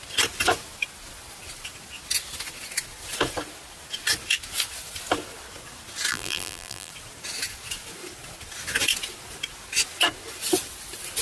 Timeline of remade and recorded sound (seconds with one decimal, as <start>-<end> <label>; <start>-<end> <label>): 0.0-6.1 recorded; 6.1-6.9 remade; 6.9-11.2 recorded